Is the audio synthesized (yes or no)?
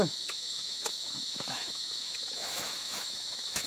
yes